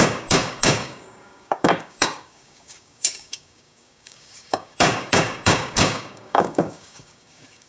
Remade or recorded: remade